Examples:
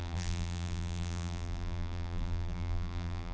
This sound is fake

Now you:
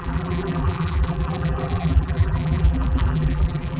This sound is fake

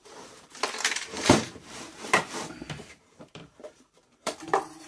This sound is fake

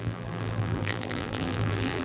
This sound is fake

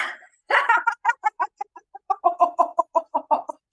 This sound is fake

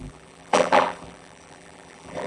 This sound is fake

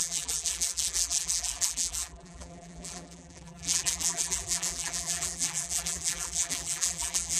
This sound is fake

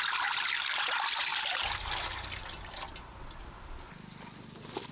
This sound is real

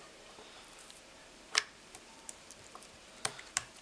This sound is fake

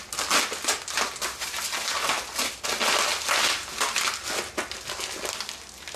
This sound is real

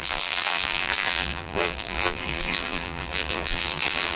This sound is fake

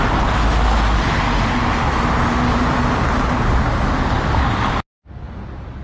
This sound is real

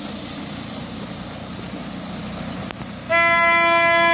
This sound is real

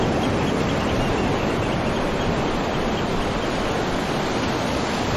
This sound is real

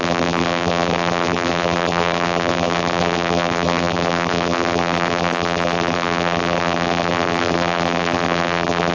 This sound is fake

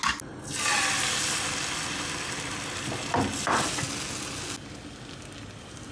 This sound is real